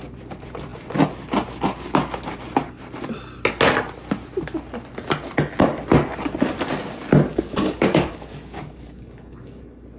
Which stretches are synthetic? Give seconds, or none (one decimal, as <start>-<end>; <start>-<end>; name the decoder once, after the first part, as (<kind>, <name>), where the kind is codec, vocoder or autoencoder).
7.3-9.6 (codec, DAC)